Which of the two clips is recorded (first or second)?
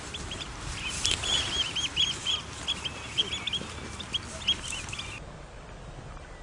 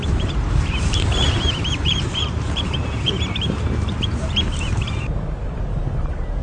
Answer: first